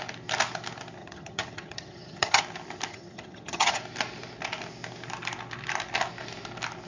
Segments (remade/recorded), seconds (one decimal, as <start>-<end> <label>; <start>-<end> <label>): 0.0-1.0 recorded; 1.0-2.4 remade; 2.4-2.9 recorded; 2.9-3.8 remade; 3.8-6.9 recorded